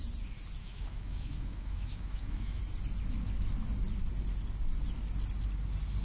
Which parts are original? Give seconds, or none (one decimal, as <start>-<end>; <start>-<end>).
0.0-0.6; 2.6-6.0